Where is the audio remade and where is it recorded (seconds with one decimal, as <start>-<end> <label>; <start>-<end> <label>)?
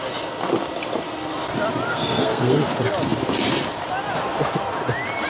0.0-1.9 recorded; 1.9-2.6 remade; 2.6-5.3 recorded